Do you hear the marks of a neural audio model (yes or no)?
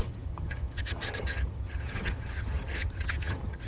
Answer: yes